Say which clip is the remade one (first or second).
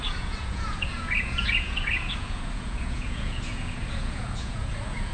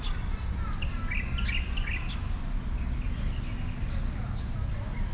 first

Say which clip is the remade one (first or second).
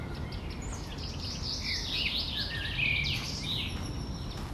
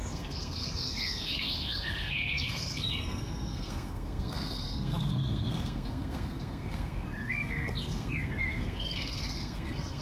second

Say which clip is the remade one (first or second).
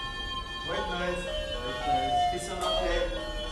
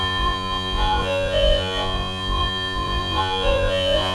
second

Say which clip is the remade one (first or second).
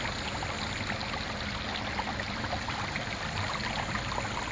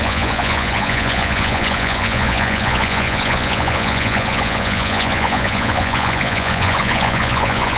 second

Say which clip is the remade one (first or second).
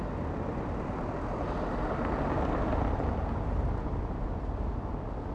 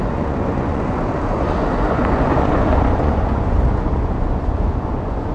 second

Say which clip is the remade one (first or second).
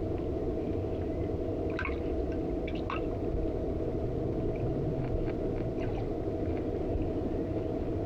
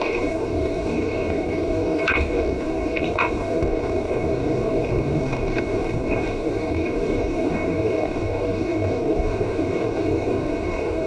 second